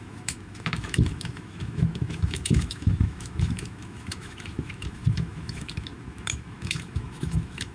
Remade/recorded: remade